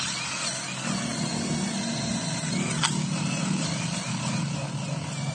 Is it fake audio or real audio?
real